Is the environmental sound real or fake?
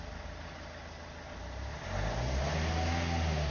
real